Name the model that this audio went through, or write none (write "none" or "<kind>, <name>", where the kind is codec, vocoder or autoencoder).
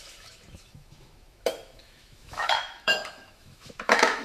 autoencoder, DAC-VAE